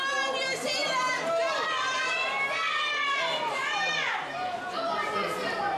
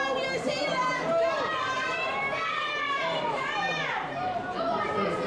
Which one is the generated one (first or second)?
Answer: second